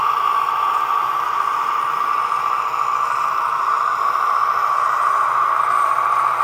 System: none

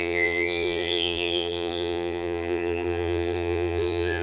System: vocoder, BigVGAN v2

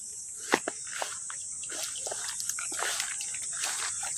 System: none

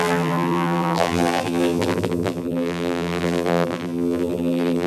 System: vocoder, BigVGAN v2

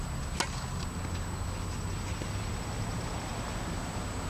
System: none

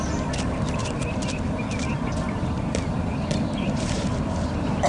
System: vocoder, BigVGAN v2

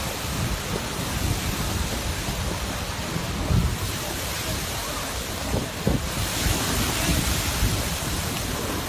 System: none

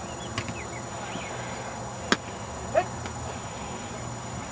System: none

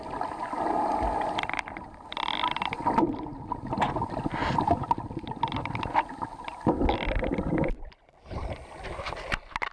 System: none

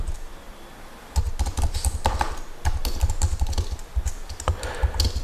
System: none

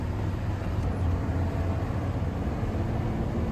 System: vocoder, BigVGAN v2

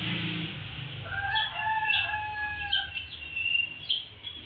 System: none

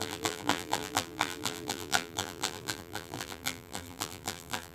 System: vocoder, BigVGAN v2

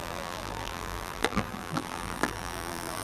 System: vocoder, BigVGAN v2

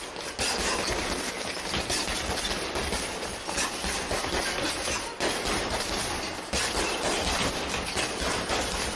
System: none